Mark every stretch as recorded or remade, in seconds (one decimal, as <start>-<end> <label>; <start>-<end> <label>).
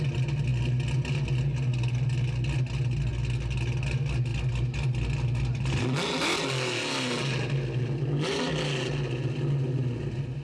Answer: 0.0-10.4 recorded